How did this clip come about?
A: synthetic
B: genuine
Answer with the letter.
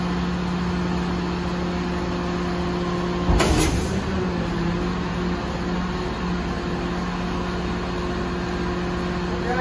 B